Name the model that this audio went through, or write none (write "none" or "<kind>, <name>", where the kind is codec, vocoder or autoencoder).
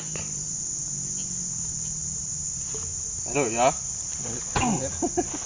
none